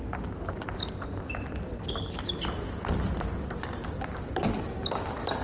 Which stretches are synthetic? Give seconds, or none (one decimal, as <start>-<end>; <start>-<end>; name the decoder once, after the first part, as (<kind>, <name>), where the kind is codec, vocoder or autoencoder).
none